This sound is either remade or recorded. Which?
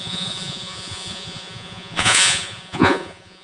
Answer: remade